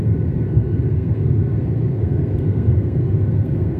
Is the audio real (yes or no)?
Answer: no